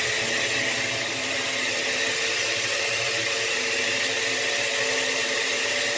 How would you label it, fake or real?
real